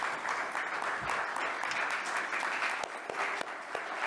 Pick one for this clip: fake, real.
real